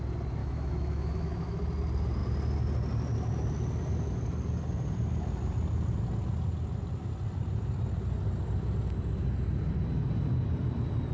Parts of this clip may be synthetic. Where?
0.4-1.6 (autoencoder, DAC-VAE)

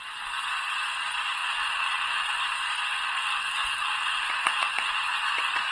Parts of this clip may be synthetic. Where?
1.4-2.4 (vocoder, WaveNeXt); 2.9-4.9

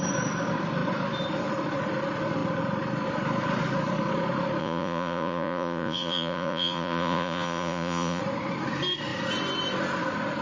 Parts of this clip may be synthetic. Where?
4.6-8.2 (vocoder, Vocos)

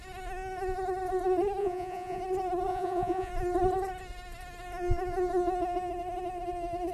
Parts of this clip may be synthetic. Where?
1.6-2.2 (vocoder, Vocos); 2.7-3.3